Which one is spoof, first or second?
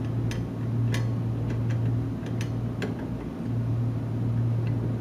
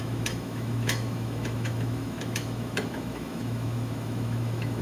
second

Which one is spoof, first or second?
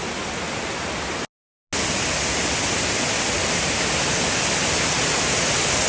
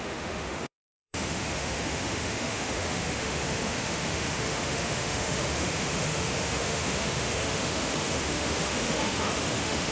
second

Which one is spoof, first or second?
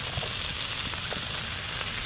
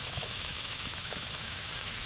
second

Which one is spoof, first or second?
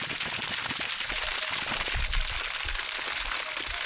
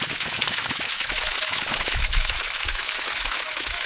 second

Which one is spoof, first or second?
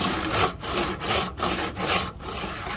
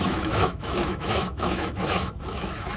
second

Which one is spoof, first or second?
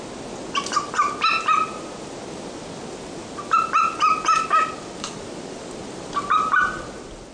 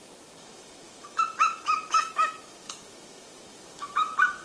second